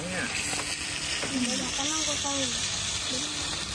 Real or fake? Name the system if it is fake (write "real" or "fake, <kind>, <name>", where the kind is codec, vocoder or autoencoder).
real